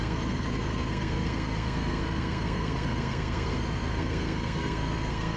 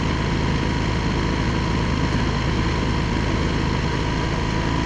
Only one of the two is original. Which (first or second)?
second